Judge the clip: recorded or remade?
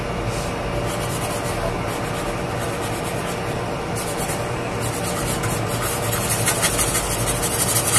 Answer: recorded